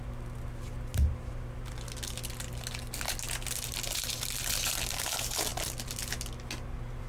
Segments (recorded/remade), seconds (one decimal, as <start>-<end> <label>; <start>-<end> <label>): 0.0-7.1 recorded